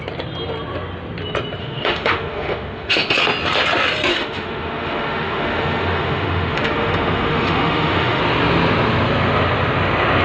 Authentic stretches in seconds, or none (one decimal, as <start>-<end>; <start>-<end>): 0.0-1.6; 3.2-4.1; 8.2-10.2